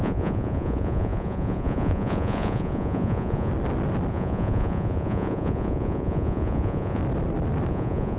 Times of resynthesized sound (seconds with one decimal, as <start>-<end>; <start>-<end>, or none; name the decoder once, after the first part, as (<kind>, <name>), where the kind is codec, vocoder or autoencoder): 0.0-3.5 (vocoder, Vocos); 4.1-7.0; 7.7-8.2